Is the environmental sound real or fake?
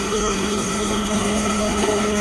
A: fake